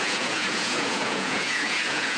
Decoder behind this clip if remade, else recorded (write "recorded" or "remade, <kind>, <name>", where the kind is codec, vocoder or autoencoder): remade, vocoder, Vocos